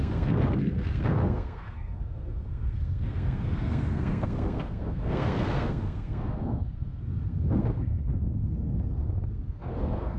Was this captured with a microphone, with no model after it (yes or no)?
no